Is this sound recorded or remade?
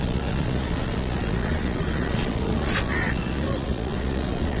remade